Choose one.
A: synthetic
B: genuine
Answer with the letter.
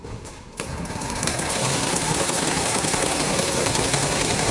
A